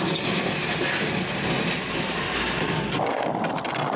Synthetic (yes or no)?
no